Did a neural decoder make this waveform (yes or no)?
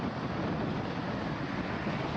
no